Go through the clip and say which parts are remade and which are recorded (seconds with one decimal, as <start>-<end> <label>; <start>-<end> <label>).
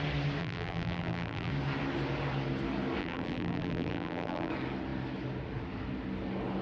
0.0-0.4 recorded; 0.4-1.5 remade; 1.5-3.0 recorded; 3.0-4.5 remade; 4.5-6.6 recorded